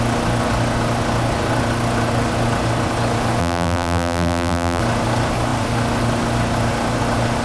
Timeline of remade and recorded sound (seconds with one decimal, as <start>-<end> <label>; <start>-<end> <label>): 0.0-3.4 recorded; 3.4-4.8 remade; 4.8-7.4 recorded